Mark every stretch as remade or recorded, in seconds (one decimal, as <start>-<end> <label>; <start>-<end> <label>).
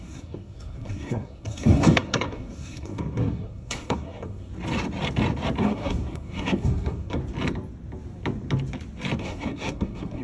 0.0-4.5 remade; 4.5-5.6 recorded; 5.6-7.2 remade; 7.2-9.2 recorded; 9.2-10.2 remade